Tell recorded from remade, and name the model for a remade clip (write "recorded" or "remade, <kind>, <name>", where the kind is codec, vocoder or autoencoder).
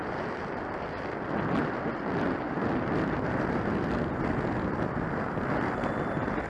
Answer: recorded